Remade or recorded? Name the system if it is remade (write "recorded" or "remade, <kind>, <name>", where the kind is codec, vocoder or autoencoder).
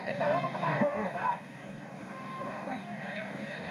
remade, codec, DAC